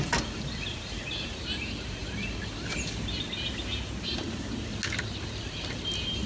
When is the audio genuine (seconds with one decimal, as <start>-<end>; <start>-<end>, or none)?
0.0-6.3